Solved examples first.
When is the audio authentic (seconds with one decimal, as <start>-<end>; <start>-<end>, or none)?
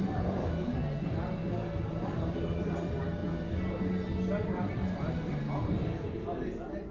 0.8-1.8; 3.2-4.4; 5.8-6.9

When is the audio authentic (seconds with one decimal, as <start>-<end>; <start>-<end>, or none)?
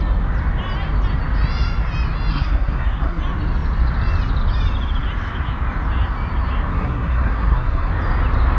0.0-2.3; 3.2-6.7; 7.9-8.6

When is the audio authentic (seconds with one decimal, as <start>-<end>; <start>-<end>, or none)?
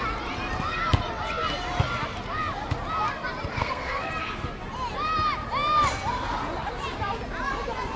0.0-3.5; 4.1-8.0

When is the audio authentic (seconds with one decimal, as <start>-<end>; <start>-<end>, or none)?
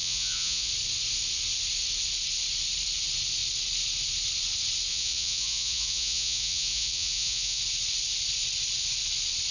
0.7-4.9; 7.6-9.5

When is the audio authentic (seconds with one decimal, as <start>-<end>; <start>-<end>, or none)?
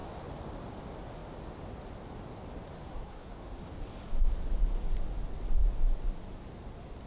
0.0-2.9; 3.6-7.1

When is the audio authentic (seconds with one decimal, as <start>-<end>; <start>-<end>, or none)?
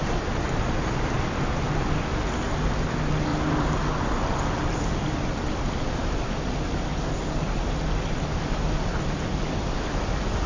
0.0-3.3; 5.1-6.0; 6.5-10.5